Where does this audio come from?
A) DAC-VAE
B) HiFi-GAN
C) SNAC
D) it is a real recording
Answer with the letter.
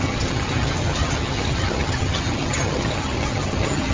B